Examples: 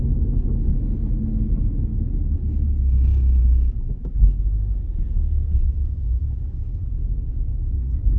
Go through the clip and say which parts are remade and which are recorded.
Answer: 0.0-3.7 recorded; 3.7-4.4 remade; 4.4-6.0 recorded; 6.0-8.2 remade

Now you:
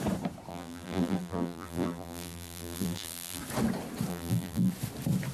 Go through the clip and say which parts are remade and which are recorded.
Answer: 0.0-0.5 recorded; 0.5-3.4 remade; 3.4-4.1 recorded; 4.1-4.7 remade; 4.7-5.3 recorded

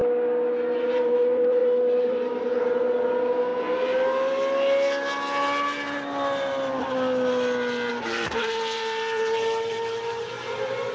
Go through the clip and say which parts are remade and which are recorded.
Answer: 0.0-0.8 recorded; 0.8-3.5 remade; 3.5-7.9 recorded; 7.9-10.9 remade